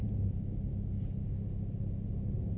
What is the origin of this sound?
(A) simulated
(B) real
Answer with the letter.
B